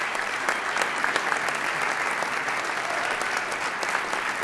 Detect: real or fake real